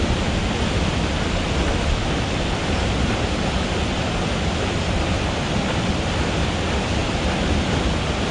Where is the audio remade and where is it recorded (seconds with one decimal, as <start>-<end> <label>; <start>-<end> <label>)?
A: 0.0-8.3 recorded